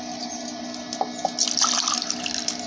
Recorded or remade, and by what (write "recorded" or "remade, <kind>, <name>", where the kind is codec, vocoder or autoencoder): recorded